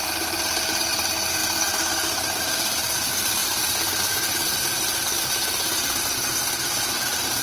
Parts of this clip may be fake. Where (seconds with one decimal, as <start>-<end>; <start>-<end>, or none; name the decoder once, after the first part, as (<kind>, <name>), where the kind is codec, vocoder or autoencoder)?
0.0-7.4 (vocoder, BigVGAN v2)

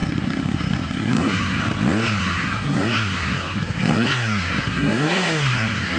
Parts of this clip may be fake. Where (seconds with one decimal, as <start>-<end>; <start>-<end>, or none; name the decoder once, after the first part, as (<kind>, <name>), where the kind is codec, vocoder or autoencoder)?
0.0-1.6 (codec, SNAC); 2.2-6.0